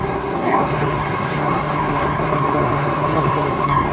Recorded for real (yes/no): no